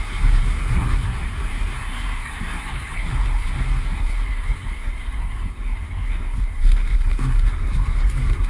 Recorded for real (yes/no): no